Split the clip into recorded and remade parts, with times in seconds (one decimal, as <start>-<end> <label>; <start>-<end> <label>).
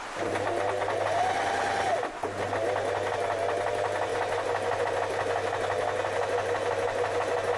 0.0-7.6 recorded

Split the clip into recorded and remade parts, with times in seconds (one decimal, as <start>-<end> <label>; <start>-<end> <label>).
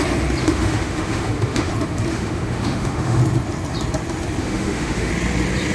0.0-0.4 recorded; 0.4-1.7 remade; 1.7-2.1 recorded; 2.1-3.2 remade; 3.2-4.4 recorded; 4.4-5.1 remade; 5.1-5.7 recorded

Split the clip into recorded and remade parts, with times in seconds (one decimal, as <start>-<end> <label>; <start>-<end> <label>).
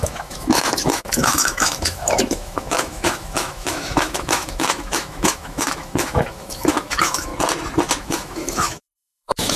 0.0-7.3 remade; 7.3-8.0 recorded; 8.0-9.6 remade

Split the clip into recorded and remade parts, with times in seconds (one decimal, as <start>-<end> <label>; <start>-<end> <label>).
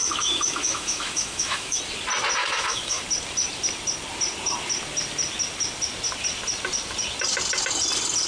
0.0-1.8 remade; 1.8-2.4 recorded; 2.4-3.0 remade; 3.0-8.3 recorded